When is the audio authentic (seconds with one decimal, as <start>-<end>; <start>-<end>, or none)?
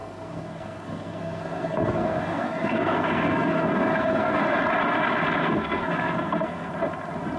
4.4-5.4; 6.7-7.4